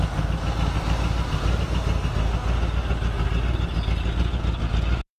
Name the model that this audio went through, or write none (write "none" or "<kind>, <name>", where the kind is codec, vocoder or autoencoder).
none